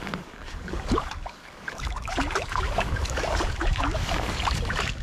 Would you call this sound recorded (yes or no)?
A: no